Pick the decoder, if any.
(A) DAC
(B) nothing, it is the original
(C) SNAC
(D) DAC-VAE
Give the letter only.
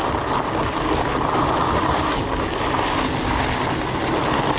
B